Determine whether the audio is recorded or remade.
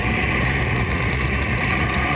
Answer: remade